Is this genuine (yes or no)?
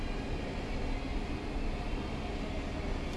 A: yes